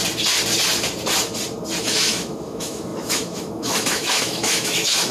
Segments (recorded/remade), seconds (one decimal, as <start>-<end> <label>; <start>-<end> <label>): 0.0-1.8 recorded; 1.8-5.1 remade